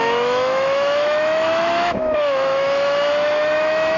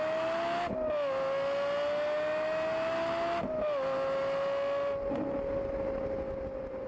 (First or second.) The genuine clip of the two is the second